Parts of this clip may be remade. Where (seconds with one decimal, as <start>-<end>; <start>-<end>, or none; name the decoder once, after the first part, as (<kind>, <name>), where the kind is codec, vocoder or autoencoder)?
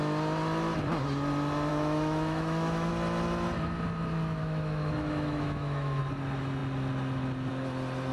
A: 1.7-2.9 (autoencoder, DAC-VAE); 4.4-6.0